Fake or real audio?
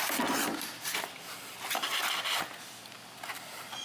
real